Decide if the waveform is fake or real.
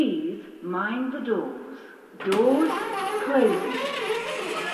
real